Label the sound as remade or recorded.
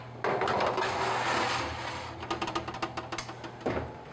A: recorded